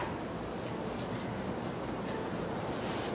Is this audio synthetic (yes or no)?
no